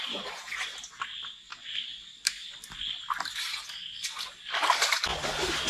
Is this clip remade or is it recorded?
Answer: recorded